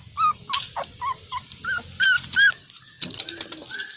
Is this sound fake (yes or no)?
no